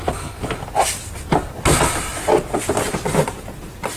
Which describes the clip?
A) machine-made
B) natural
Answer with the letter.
B